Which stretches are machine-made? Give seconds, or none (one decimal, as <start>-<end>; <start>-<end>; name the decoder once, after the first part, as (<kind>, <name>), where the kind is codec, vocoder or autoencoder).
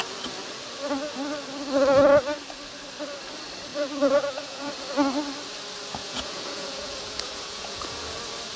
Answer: 3.7-4.7 (vocoder, Vocos); 6.0-8.2